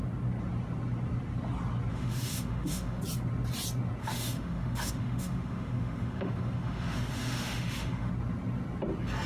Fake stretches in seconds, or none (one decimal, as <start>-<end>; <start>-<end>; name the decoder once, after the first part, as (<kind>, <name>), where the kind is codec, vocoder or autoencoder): 1.9-3.0 (autoencoder, DAC-VAE); 4.0-8.1